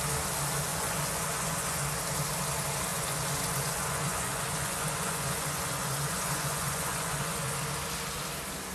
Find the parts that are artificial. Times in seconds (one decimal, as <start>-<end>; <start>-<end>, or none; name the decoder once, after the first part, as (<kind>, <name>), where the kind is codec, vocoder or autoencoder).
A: 0.7-1.8 (vocoder, Vocos); 2.9-7.6